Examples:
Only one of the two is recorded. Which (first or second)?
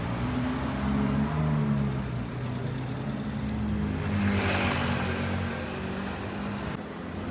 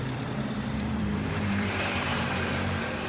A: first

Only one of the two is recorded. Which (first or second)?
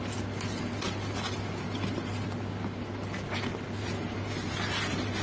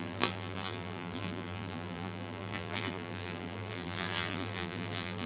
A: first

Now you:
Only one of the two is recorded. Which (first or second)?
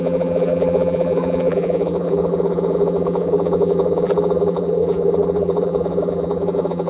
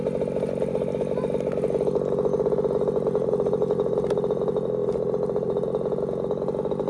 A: second